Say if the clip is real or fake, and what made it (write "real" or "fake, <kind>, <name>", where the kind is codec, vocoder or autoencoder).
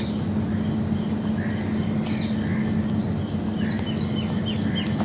real